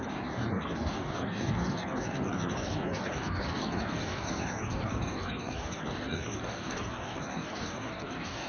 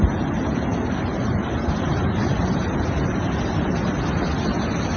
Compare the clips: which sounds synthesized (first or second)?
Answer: first